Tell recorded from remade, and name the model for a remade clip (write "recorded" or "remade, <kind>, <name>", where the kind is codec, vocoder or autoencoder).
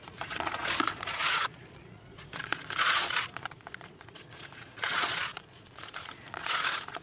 remade, vocoder, Vocos